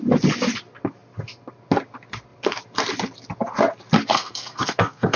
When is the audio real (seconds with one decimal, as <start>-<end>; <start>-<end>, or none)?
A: 0.0-4.1